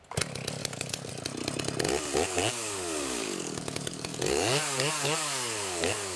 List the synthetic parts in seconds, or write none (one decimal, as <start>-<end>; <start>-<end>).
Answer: 0.6-1.1; 2.4-6.2